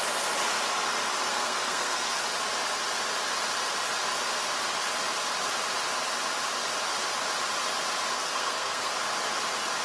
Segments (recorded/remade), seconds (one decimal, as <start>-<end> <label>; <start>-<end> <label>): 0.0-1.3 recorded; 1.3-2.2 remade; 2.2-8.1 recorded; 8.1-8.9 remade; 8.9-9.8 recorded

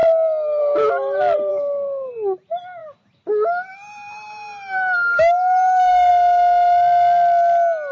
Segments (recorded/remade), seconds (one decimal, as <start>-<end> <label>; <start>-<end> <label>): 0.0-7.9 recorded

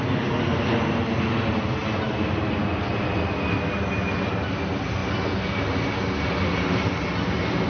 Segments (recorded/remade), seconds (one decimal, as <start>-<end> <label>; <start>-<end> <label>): 0.0-7.7 recorded

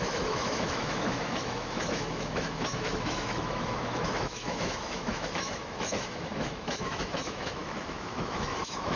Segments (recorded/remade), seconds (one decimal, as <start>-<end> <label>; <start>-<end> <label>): 0.0-9.0 remade